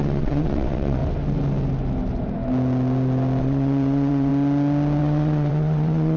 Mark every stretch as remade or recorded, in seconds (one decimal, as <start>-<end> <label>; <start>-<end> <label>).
0.0-1.0 remade; 1.0-3.4 recorded; 3.4-4.3 remade; 4.3-5.0 recorded; 5.0-6.2 remade